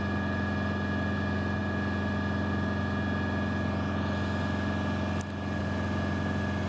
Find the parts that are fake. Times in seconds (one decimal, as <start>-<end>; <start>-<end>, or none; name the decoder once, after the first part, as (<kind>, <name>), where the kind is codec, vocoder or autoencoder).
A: none